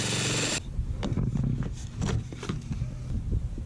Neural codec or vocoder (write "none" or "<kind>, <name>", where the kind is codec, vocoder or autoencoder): none